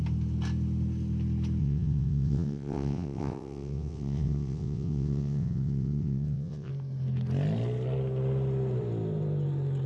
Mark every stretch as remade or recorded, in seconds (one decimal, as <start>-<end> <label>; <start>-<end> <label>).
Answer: 0.0-1.6 recorded; 1.6-6.7 remade; 6.7-9.9 recorded